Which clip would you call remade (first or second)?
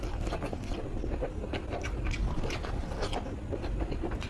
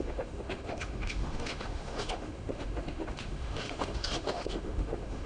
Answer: second